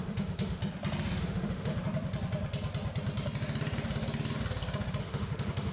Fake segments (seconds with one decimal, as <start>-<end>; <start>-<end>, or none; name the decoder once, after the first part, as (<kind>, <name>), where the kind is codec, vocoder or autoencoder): 0.0-0.6 (autoencoder, DAC-VAE); 1.2-1.7; 5.0-5.7